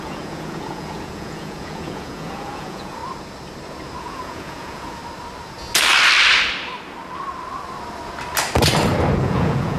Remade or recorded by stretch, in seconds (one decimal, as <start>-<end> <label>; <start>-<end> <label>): 0.0-3.0 remade; 3.0-4.0 recorded; 4.0-5.0 remade; 5.0-9.2 recorded; 9.2-9.8 remade